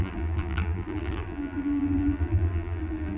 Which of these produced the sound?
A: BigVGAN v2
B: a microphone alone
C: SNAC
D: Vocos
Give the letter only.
A